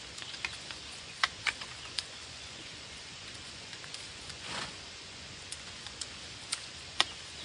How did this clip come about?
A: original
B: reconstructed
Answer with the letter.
B